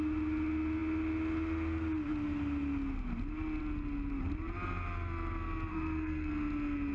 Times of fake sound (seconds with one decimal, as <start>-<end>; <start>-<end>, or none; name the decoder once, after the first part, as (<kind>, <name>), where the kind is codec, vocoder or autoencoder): 5.7-6.3 (codec, SNAC)